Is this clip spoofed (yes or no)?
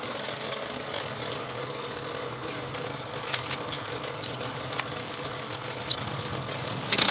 yes